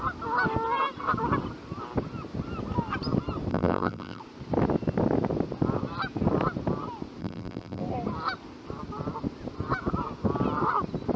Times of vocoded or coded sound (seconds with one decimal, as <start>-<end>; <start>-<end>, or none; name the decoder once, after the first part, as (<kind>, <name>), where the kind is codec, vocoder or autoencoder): 3.5-4.2 (vocoder, BigVGAN v2); 7.2-7.8